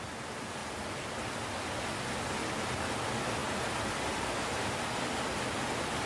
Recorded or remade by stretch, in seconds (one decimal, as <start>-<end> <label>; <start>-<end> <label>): 0.0-0.6 recorded; 0.6-1.8 remade; 1.8-3.4 recorded; 3.4-4.2 remade; 4.2-6.1 recorded